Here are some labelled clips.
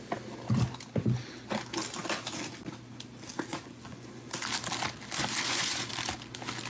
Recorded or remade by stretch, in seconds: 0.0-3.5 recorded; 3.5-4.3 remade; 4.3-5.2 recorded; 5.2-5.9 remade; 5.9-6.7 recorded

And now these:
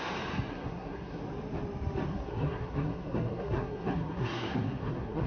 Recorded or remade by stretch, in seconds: 0.0-0.5 recorded; 0.5-1.2 remade; 1.2-2.1 recorded; 2.1-5.3 remade

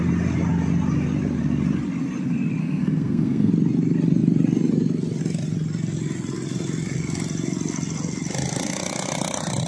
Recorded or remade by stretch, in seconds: 0.0-2.6 recorded; 2.6-3.5 remade; 3.5-9.7 recorded

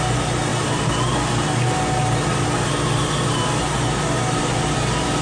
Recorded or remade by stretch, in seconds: 0.0-5.2 recorded

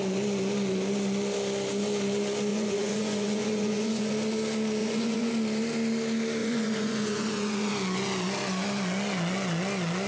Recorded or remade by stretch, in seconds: 0.0-2.5 recorded; 2.5-4.1 remade; 4.1-4.8 recorded; 4.8-5.3 remade; 5.3-6.4 recorded; 6.4-7.7 remade; 7.7-10.1 recorded

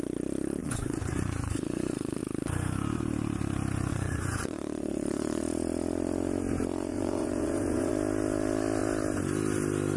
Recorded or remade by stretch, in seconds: 0.0-0.6 recorded; 0.6-2.2 remade; 2.2-3.9 recorded; 3.9-5.4 remade; 5.4-6.9 recorded; 6.9-7.9 remade; 7.9-10.0 recorded